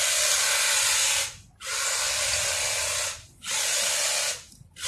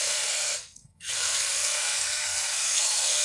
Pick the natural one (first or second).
first